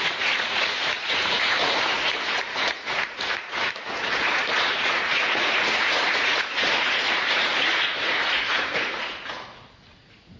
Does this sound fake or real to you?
fake